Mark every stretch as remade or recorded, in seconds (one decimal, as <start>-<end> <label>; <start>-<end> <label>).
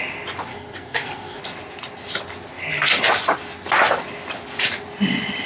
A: 0.0-0.5 recorded; 0.5-1.4 remade; 1.4-5.5 recorded